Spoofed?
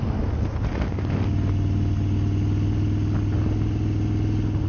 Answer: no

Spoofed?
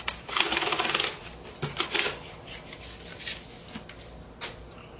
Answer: no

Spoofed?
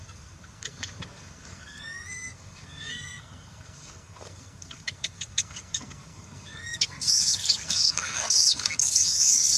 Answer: yes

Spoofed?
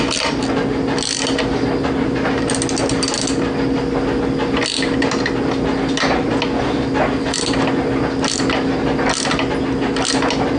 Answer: no